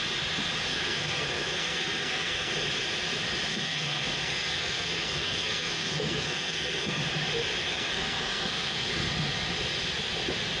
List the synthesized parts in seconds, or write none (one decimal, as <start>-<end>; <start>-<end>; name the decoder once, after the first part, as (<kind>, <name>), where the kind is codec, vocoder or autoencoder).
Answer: 0.7-2.5 (codec, SNAC); 3.5-7.0; 7.6-8.9